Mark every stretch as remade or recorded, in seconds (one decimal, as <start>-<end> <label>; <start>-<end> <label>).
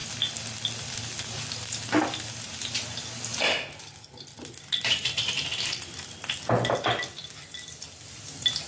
0.0-8.7 recorded